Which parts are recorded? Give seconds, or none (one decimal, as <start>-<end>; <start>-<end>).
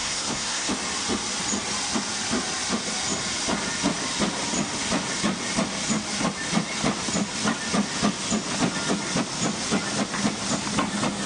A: 0.7-11.3